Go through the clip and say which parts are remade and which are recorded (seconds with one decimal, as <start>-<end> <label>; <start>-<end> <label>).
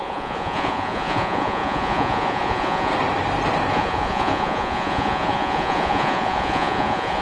0.0-2.9 remade; 2.9-3.7 recorded; 3.7-7.2 remade